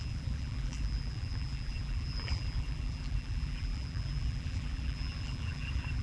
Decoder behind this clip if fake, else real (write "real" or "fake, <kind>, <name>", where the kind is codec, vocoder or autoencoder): fake, vocoder, BigVGAN v2